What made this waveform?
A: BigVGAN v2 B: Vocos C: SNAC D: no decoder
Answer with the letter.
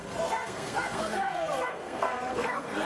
C